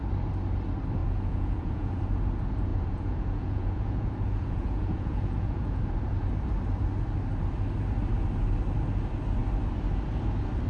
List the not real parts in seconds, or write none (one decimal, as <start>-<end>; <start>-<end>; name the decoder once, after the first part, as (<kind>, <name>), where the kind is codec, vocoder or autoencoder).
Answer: 1.0-2.0 (vocoder, Vocos); 2.7-5.8